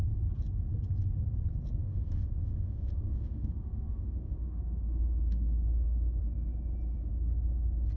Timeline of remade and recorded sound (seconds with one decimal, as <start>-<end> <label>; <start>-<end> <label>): 0.0-1.8 recorded; 1.8-6.2 remade; 6.2-8.0 recorded